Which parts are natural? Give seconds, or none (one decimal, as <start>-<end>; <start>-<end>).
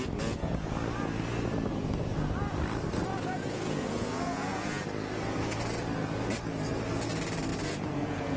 0.0-3.1; 4.7-7.5